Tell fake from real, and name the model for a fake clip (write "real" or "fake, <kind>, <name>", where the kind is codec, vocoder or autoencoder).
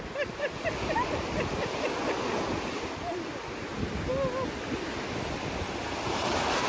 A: real